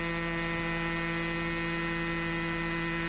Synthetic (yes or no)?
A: no